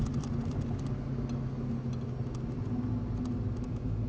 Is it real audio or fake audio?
real